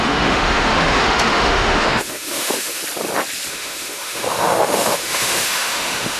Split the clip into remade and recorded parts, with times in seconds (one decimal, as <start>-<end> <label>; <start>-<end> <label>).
0.0-2.8 remade; 2.8-3.5 recorded; 3.5-6.2 remade